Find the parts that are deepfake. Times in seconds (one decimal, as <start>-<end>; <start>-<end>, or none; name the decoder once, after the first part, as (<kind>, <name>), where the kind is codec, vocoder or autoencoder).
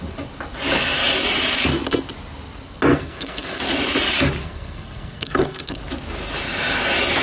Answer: 2.9-3.6 (codec, SNAC); 4.4-5.8